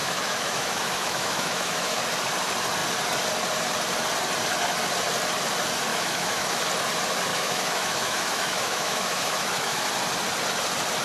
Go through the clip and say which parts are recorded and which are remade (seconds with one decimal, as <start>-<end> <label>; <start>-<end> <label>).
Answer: 0.0-2.0 remade; 2.0-5.9 recorded; 5.9-6.6 remade; 6.6-7.3 recorded; 7.3-9.9 remade; 9.9-11.0 recorded